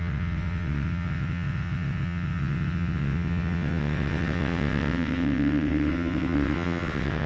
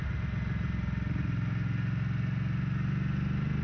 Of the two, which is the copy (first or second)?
first